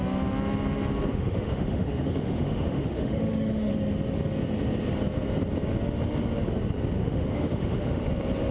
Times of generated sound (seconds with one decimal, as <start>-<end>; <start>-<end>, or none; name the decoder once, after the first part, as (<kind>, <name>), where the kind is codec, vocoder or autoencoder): 1.1-3.7 (autoencoder, DAC-VAE); 7.0-8.1

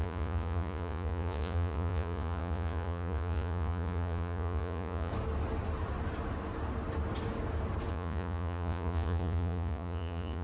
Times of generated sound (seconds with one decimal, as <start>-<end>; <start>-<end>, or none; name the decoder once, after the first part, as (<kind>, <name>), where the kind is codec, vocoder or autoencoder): 0.0-5.1 (vocoder, Vocos); 7.9-10.4

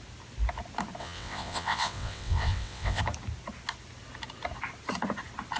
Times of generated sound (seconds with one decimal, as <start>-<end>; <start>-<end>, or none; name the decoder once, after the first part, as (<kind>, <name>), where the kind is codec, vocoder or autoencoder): 1.0-3.0 (vocoder, WaveNeXt)

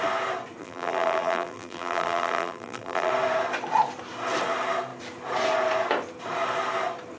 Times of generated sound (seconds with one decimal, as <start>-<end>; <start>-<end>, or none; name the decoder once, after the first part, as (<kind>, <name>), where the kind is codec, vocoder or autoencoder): 0.6-3.1 (vocoder, BigVGAN v2)

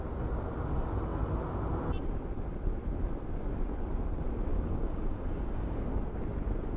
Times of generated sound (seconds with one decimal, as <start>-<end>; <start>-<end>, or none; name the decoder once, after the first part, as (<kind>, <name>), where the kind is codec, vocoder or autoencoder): 4.5-5.8 (codec, DAC)

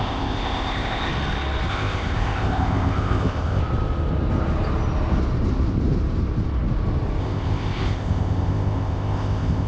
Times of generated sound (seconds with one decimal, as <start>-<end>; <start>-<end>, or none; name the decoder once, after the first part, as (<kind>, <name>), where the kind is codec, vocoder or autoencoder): 0.0-1.1 (codec, ZipCodec); 1.7-3.6; 7.2-9.7

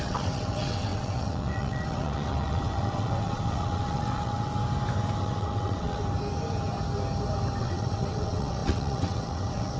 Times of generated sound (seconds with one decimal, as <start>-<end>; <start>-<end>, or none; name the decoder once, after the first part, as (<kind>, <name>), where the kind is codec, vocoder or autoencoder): 0.0-4.5 (vocoder, WaveNeXt); 5.2-6.0; 7.6-9.8